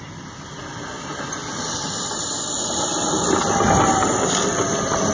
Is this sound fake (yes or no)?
no